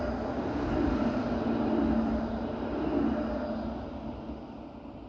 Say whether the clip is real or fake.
real